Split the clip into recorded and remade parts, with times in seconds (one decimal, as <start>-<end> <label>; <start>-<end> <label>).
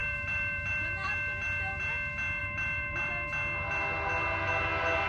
0.0-1.1 remade; 1.1-2.4 recorded; 2.4-3.1 remade; 3.1-5.1 recorded